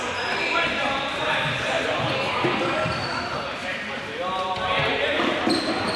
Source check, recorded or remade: recorded